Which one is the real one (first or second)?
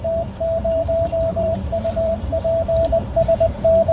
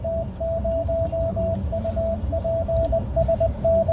second